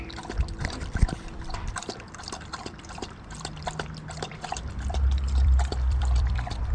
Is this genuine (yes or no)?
no